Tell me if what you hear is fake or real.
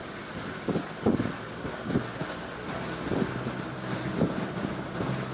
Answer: real